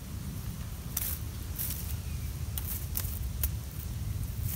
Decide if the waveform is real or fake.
real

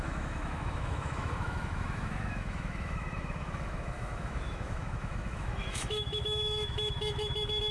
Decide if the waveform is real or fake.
fake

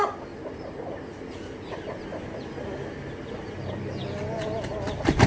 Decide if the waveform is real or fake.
real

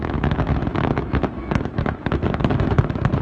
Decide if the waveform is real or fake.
fake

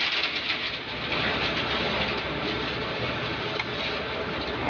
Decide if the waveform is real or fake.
real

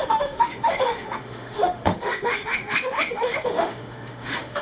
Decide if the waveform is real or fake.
fake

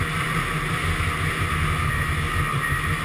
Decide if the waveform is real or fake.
real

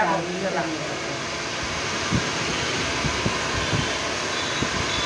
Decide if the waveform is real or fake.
real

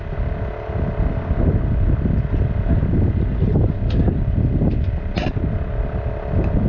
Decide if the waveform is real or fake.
real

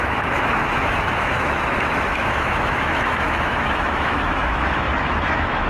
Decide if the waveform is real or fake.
fake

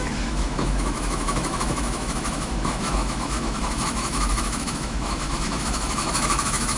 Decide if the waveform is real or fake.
fake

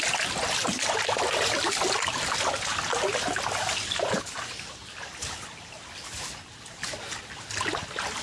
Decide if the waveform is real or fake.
real